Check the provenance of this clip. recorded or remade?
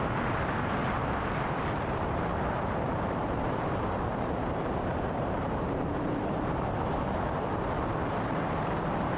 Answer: remade